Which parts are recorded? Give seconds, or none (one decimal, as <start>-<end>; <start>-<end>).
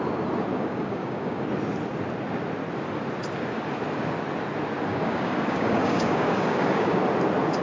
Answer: 0.0-0.5; 1.5-4.9; 7.0-7.6